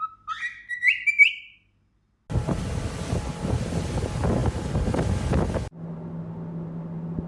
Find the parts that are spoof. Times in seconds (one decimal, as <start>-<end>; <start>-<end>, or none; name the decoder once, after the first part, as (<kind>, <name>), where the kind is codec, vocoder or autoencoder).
none